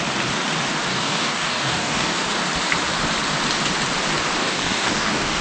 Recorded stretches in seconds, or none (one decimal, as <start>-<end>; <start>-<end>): 0.0-0.9; 2.1-4.4